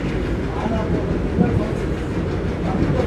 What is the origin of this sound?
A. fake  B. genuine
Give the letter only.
B